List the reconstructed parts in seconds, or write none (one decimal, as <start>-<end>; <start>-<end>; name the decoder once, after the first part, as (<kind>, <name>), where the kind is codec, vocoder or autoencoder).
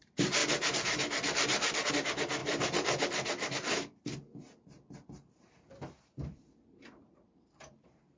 0.0-8.2 (vocoder, BigVGAN v2)